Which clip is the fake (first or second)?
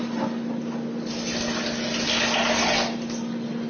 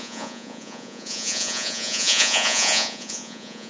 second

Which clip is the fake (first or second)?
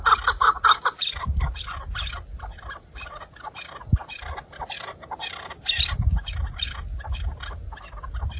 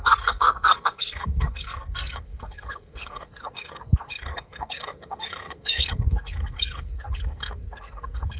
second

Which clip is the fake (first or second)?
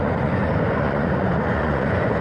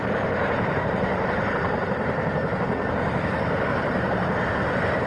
first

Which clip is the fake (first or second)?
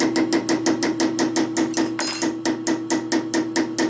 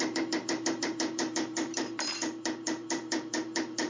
second